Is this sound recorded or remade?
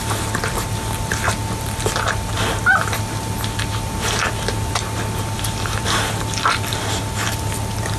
recorded